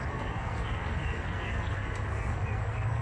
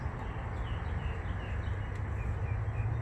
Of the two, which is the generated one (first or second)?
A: first